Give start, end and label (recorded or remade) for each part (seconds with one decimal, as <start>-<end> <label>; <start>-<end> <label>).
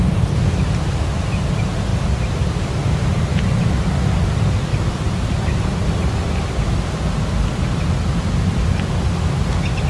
0.0-1.9 recorded; 1.9-2.6 remade; 2.6-4.7 recorded; 4.7-5.7 remade; 5.7-9.9 recorded